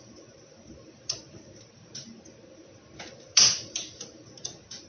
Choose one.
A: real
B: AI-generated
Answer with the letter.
A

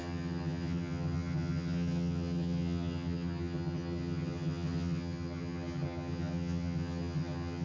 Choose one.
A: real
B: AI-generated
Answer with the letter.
B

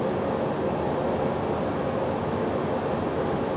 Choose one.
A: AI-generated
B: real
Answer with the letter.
B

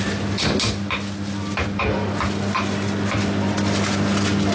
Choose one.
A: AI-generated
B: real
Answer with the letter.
B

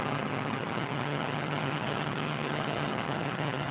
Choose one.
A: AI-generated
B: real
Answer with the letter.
A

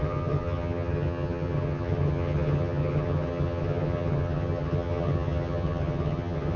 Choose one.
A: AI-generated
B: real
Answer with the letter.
A